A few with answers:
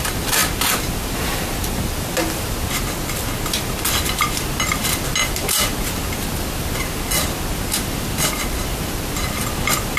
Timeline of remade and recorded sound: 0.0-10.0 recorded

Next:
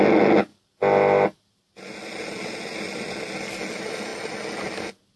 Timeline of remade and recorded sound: 0.0-5.2 recorded

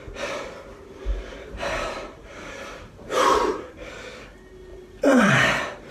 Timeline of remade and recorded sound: 0.0-0.7 recorded; 0.7-4.1 remade; 4.1-4.7 recorded; 4.7-5.3 remade; 5.3-5.9 recorded

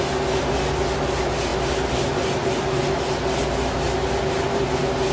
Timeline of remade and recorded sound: 0.0-5.1 recorded

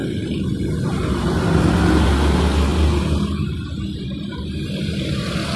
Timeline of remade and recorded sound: 0.0-4.3 recorded; 4.3-5.0 remade; 5.0-5.6 recorded

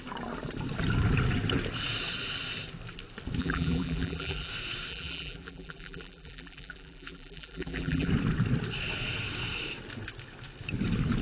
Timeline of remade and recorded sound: 0.0-3.4 recorded; 3.4-4.5 remade; 4.5-4.9 recorded; 4.9-8.1 remade; 8.1-11.2 recorded

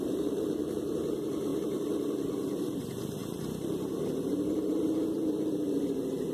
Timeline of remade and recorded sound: 0.0-6.3 remade

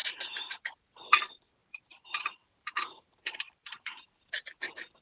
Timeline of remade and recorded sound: 0.0-0.8 remade; 0.8-1.6 recorded; 1.6-4.0 remade; 4.0-5.0 recorded